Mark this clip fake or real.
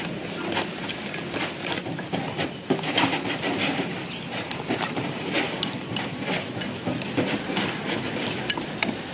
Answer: real